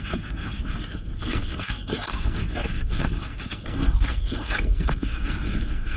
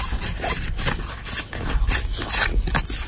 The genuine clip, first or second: second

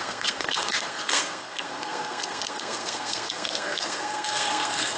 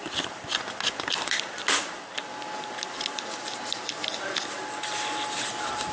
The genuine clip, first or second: second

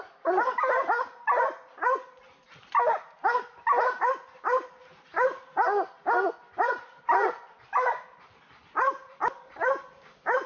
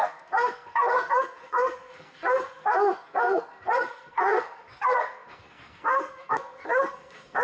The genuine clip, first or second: first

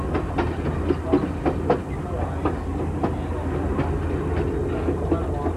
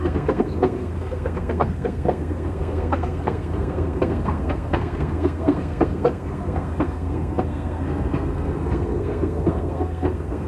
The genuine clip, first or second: first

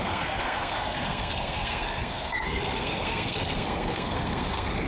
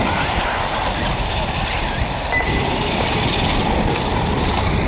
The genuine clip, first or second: second